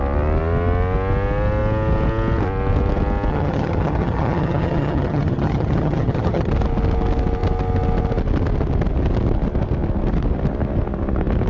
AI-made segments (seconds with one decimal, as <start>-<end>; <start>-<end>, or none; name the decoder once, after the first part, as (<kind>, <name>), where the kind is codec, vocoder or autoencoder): 3.3-6.5 (vocoder, HiFi-GAN)